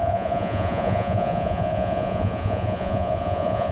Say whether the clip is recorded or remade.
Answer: remade